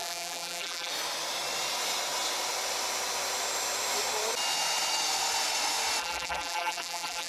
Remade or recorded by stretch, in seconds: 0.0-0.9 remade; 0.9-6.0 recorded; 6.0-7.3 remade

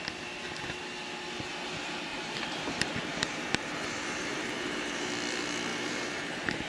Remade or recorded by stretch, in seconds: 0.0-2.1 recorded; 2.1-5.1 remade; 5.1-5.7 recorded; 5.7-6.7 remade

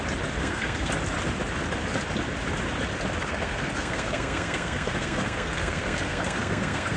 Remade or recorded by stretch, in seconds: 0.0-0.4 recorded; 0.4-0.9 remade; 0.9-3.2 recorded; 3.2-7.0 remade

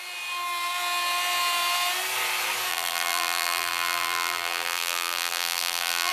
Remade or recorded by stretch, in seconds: 0.0-2.7 recorded; 2.7-6.1 remade

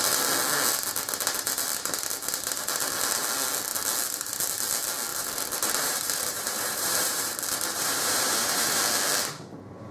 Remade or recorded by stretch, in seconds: 0.0-5.1 recorded; 5.1-8.8 remade; 8.8-9.9 recorded

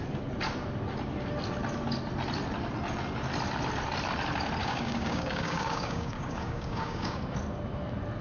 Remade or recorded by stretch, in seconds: 0.0-4.6 recorded; 4.6-7.2 remade; 7.2-8.2 recorded